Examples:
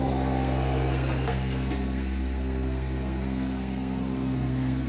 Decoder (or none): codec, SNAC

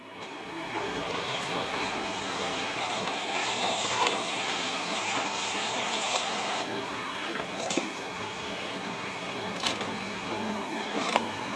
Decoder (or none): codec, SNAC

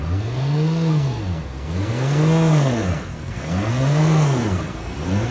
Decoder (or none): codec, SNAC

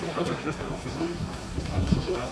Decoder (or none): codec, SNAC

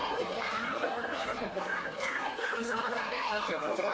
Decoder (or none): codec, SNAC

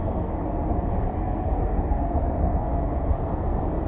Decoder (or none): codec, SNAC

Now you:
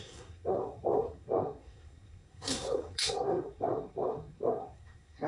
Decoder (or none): codec, SNAC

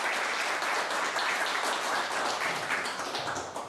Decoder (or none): none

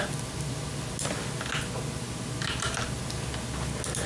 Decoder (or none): none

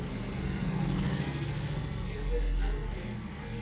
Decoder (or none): codec, SNAC